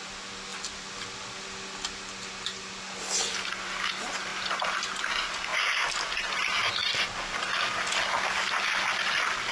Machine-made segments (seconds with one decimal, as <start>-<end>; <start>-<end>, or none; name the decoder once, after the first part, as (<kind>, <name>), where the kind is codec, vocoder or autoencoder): none